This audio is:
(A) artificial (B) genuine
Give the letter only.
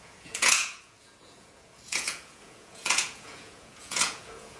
A